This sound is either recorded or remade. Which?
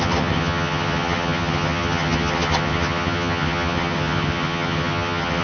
remade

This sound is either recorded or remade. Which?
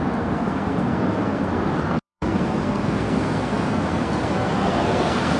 remade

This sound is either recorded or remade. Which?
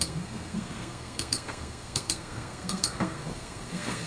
remade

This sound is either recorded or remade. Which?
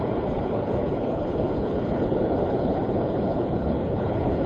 remade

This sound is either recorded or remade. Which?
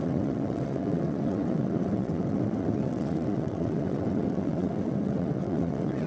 remade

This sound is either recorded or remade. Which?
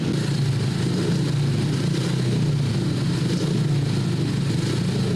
recorded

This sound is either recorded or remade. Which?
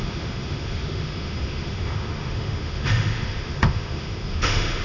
remade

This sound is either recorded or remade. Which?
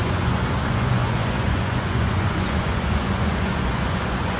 remade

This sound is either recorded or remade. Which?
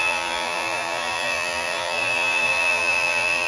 remade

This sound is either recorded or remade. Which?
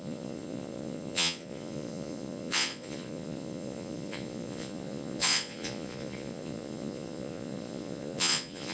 remade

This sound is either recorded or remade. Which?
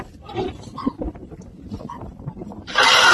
remade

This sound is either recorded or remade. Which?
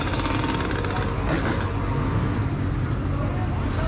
recorded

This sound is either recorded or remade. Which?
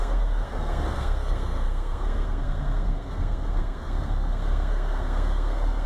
remade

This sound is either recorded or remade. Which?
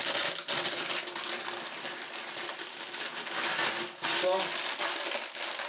recorded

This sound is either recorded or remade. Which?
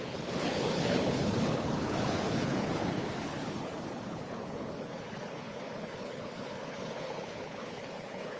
remade